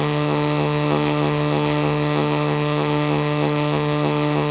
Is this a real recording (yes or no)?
no